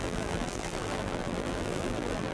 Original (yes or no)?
no